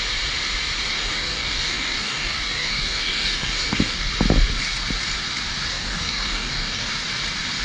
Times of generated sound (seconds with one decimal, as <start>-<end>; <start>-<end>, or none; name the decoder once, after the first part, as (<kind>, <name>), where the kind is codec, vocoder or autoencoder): 0.9-4.1 (codec, DAC); 5.7-6.9